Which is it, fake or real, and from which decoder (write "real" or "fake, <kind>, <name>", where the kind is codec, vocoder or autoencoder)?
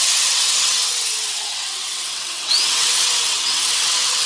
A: fake, vocoder, WaveNeXt